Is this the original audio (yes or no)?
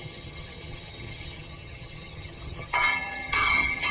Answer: no